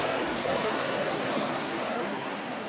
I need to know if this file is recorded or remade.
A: remade